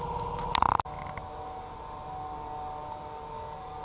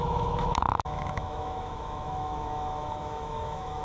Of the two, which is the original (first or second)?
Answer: first